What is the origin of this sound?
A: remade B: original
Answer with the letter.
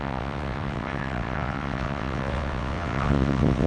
A